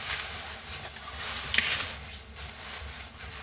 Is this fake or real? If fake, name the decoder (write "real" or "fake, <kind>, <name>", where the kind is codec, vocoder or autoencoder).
real